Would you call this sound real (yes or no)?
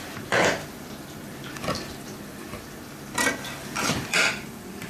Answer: no